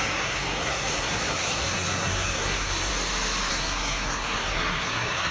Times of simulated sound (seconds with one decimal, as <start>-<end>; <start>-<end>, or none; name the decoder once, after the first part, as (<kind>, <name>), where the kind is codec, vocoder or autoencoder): 0.0-2.9 (codec, SNAC); 3.5-5.3

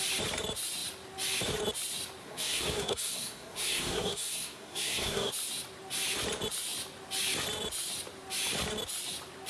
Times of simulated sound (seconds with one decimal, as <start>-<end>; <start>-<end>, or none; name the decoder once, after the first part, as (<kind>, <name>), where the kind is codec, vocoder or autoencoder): 2.2-5.3 (codec, SNAC)

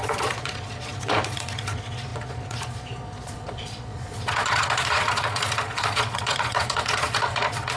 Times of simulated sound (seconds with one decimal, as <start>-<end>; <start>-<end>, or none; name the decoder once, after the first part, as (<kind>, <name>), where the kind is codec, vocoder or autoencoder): 0.0-7.8 (vocoder, Vocos)

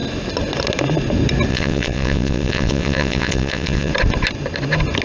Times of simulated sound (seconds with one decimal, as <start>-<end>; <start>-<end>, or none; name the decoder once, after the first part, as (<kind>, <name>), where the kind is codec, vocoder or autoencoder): 1.5-3.9 (vocoder, WaveNeXt)